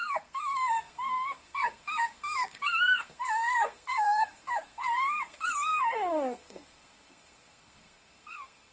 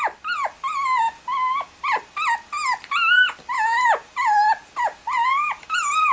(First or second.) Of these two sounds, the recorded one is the second